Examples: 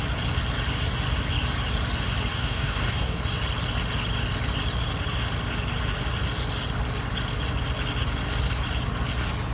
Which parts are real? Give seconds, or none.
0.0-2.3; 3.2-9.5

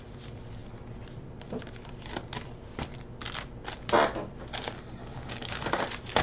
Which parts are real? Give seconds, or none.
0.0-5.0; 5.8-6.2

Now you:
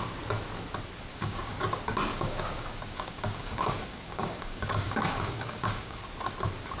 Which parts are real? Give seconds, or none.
0.0-1.1; 1.6-2.1; 6.0-6.8

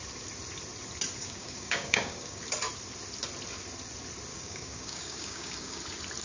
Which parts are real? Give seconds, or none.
0.0-1.2; 2.4-4.3; 5.8-6.2

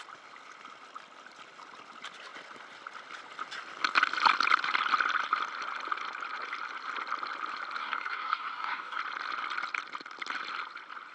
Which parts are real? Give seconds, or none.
0.0-7.8; 9.0-11.1

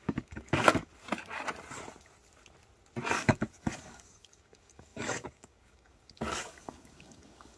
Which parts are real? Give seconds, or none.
0.9-3.1

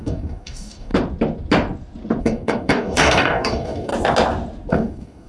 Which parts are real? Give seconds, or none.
0.9-2.2; 3.9-4.7

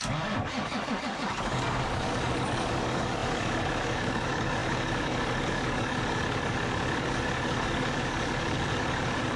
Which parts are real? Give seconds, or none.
none